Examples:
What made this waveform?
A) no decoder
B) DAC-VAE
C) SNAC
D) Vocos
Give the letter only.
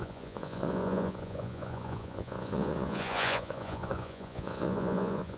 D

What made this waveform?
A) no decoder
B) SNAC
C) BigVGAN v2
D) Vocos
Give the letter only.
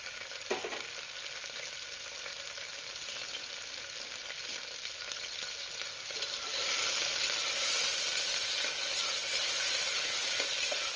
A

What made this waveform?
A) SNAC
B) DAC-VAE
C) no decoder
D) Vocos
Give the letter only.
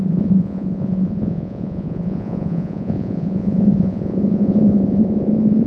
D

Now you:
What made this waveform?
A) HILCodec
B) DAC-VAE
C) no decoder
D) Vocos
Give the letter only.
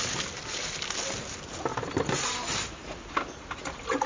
C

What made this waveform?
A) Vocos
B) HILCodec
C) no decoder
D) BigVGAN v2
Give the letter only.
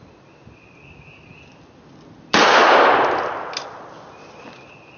C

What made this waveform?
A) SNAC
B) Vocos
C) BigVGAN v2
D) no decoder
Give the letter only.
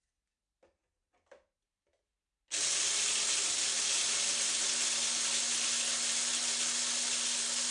D